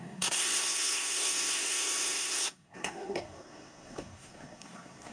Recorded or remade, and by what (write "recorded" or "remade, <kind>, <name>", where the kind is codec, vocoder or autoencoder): remade, codec, SNAC